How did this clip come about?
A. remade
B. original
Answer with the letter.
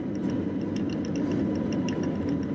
A